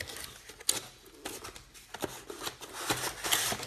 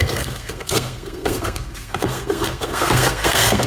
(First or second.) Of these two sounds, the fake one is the second